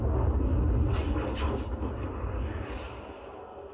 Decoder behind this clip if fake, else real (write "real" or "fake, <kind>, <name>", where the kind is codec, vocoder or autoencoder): real